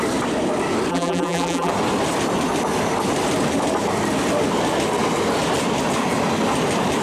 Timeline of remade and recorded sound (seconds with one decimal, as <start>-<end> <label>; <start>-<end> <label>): 0.0-0.9 recorded; 0.9-1.7 remade; 1.7-7.0 recorded